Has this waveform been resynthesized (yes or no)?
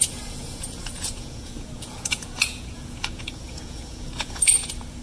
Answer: yes